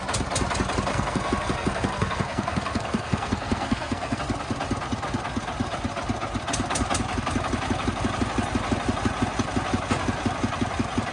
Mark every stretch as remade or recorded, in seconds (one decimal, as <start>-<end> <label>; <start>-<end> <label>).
0.0-0.9 recorded; 0.9-4.2 remade; 4.2-11.1 recorded